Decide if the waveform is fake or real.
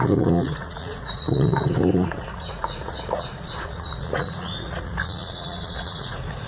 fake